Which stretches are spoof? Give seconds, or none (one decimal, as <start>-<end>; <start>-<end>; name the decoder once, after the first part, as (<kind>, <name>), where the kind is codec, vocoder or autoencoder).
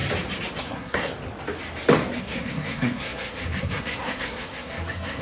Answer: 0.6-1.1 (codec, SNAC); 2.2-5.2